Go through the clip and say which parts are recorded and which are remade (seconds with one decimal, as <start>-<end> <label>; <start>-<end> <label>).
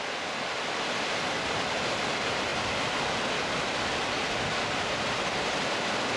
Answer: 0.0-6.2 recorded